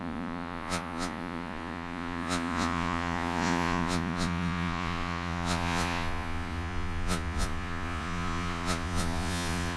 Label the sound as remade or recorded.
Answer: remade